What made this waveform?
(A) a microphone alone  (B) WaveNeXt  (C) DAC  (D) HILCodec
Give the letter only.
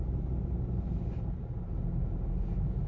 A